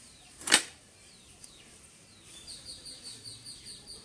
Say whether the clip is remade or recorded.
remade